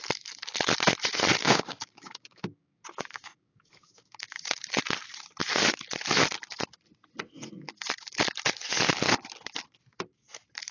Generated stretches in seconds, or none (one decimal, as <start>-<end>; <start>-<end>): 1.4-4.8